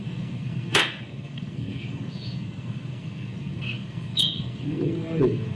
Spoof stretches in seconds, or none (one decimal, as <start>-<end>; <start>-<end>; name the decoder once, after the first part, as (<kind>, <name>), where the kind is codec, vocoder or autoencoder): 0.0-5.5 (codec, SNAC)